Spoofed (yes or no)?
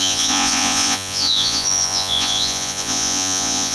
yes